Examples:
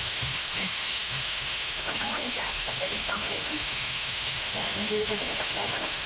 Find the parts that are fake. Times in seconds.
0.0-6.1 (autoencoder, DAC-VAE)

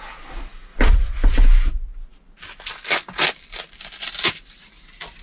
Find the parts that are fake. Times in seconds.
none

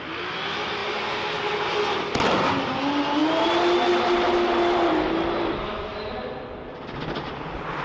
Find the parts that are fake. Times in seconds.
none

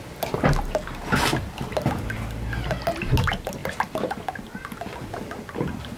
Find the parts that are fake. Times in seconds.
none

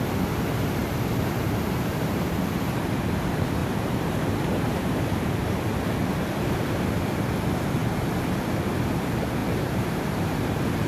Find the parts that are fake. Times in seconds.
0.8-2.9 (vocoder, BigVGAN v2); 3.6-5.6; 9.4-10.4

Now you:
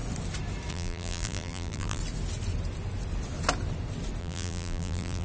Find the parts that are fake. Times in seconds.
0.7-2.0 (vocoder, BigVGAN v2); 4.2-5.2